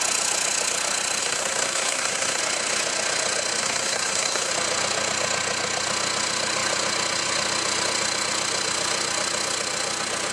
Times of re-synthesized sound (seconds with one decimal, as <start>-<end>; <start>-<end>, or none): 1.2-2.4; 3.6-4.5